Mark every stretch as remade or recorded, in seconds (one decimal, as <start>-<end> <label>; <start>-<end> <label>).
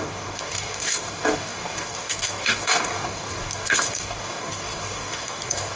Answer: 0.0-5.8 remade